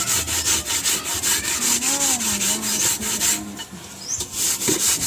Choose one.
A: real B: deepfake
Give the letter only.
A